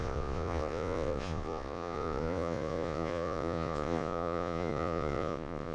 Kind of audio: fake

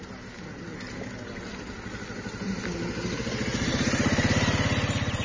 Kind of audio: real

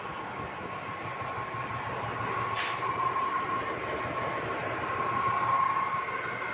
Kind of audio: real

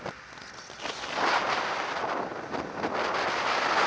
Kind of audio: real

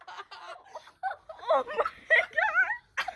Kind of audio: real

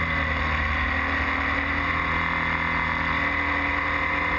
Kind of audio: real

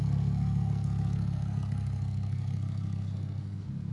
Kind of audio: fake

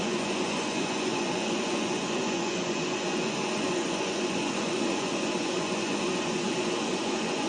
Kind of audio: fake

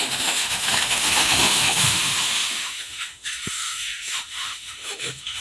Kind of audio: fake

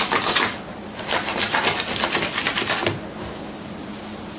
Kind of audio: real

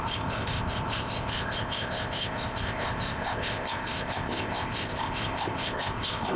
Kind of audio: fake